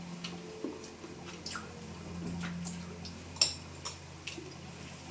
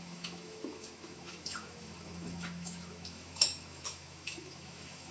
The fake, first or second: second